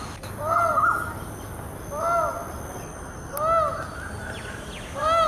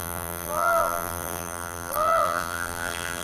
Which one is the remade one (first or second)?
second